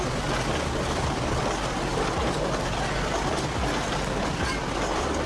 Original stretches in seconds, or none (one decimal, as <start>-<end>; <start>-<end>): 0.0-5.3